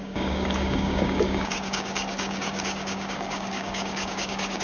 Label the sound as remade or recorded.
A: remade